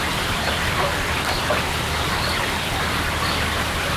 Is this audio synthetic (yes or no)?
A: yes